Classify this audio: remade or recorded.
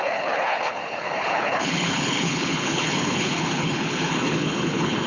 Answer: remade